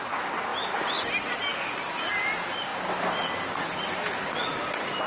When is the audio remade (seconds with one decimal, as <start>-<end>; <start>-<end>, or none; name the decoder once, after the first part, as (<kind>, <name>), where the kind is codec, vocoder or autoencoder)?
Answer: none